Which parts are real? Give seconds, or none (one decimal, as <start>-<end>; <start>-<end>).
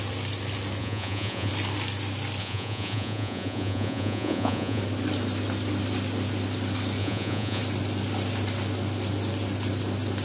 0.0-0.8; 1.5-2.4; 4.8-7.0; 7.6-10.2